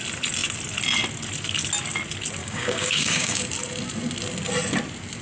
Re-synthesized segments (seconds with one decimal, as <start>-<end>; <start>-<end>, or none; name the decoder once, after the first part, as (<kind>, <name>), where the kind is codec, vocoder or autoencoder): 2.4-3.4 (codec, DAC)